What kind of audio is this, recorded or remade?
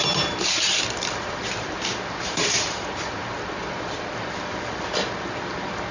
remade